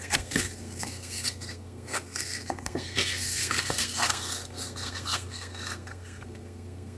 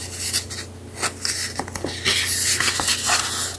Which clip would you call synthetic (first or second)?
first